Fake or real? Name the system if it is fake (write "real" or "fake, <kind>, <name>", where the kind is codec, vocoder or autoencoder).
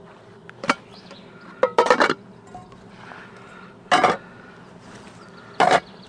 real